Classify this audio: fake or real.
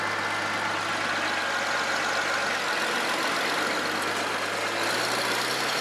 real